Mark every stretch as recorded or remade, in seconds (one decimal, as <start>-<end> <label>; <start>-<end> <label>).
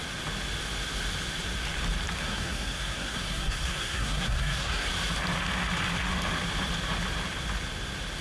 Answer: 0.0-2.2 recorded; 2.2-4.9 remade; 4.9-8.2 recorded